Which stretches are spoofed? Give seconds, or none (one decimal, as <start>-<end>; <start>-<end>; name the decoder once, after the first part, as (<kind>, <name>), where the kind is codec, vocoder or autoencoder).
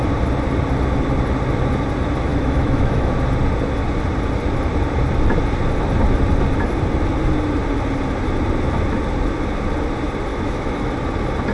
2.3-3.1 (autoencoder, DAC-VAE); 10.3-10.9